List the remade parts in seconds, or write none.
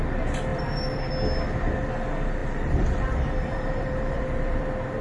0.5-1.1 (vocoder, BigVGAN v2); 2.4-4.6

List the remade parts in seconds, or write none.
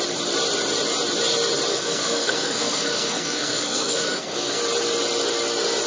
1.7-4.6 (codec, SNAC)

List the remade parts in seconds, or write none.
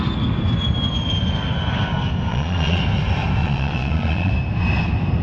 2.3-2.8 (vocoder, Vocos); 3.4-4.3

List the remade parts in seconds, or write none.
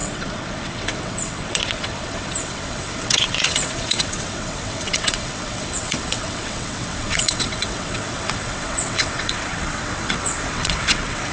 0.0-11.3 (vocoder, WaveNeXt)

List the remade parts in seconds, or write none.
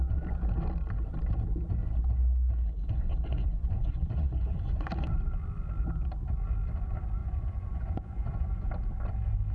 3.1-4.9 (vocoder, Vocos); 7.2-8.7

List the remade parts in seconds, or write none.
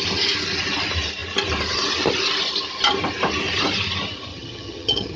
4.3-5.2 (vocoder, HiFi-GAN)